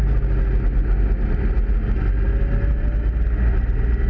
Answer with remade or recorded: recorded